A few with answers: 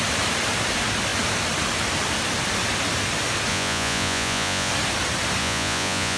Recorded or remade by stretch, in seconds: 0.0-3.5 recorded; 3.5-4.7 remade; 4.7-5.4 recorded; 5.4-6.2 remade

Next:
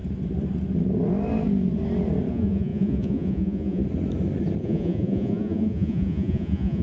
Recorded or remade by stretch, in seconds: 0.0-2.3 recorded; 2.3-3.8 remade; 3.8-4.6 recorded; 4.6-6.8 remade

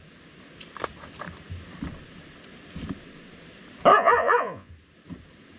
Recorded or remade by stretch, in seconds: 0.0-3.9 recorded; 3.9-4.7 remade; 4.7-5.6 recorded

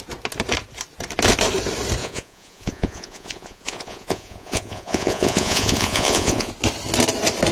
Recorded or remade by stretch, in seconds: 0.0-2.0 recorded; 2.0-6.5 remade; 6.5-7.5 recorded

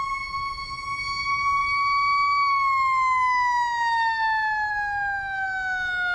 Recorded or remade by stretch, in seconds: 0.0-6.1 recorded

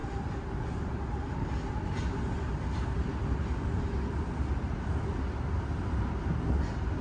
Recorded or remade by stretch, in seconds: 0.0-7.0 recorded

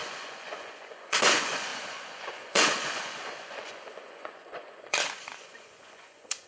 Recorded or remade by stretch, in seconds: 0.0-6.5 remade